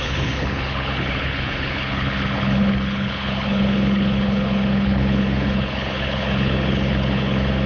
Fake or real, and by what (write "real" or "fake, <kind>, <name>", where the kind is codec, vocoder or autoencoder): fake, codec, HILCodec